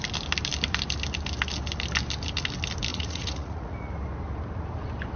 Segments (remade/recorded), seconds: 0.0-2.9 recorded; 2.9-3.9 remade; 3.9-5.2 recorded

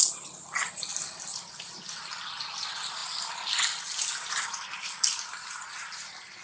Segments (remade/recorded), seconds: 0.0-6.4 recorded

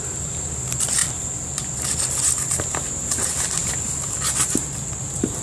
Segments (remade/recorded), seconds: 0.0-5.4 recorded

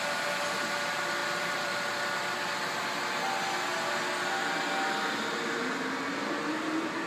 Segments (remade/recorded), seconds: 0.0-1.2 recorded; 1.2-1.9 remade; 1.9-7.1 recorded

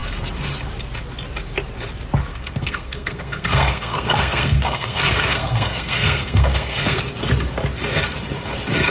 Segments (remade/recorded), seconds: 0.0-2.3 recorded; 2.3-7.0 remade; 7.0-8.9 recorded